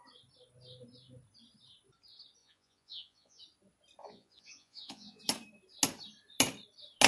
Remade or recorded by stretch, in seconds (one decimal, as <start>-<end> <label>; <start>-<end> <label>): 0.0-2.4 recorded; 2.4-3.4 remade; 3.4-4.0 recorded; 4.0-5.2 remade; 5.2-7.1 recorded

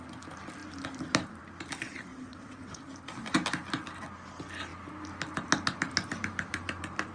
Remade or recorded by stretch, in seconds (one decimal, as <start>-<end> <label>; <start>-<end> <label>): 0.0-2.1 recorded; 2.1-2.8 remade; 2.8-7.1 recorded

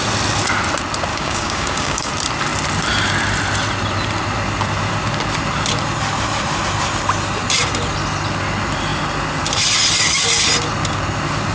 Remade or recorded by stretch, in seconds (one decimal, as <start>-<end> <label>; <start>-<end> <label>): 0.0-1.1 recorded; 1.1-2.1 remade; 2.1-11.5 recorded

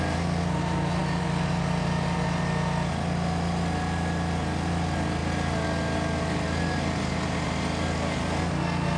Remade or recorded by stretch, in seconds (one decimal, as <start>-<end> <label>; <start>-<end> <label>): 0.0-9.0 recorded